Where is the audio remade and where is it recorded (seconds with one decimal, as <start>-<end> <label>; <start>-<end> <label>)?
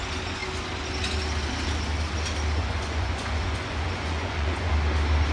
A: 0.0-2.6 recorded; 2.6-4.7 remade; 4.7-5.3 recorded